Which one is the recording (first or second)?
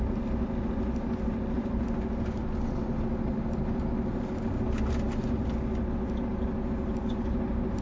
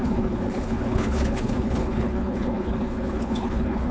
first